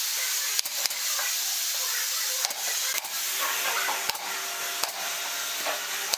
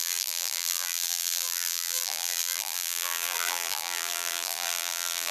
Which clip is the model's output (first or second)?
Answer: second